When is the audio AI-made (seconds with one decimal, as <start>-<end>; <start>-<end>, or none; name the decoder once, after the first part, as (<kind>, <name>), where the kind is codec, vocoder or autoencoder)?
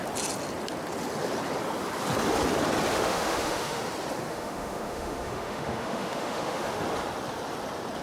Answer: 2.9-3.8 (autoencoder, DAC-VAE); 4.3-6.8